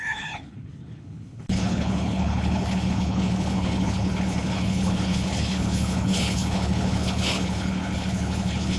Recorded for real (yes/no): no